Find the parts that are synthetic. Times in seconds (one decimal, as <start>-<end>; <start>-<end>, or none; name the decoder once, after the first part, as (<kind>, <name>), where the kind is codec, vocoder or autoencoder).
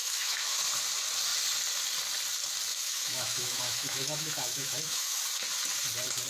0.0-0.6 (autoencoder, DAC-VAE); 2.7-5.2